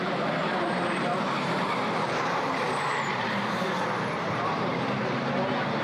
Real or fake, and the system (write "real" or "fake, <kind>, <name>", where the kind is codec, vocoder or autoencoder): fake, vocoder, BigVGAN v2